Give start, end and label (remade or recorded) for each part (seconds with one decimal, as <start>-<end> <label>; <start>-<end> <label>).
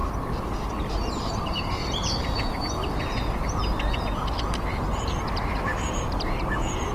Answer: 0.0-1.3 recorded; 1.3-1.8 remade; 1.8-5.9 recorded; 5.9-6.9 remade